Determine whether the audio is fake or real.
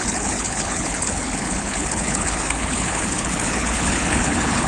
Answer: fake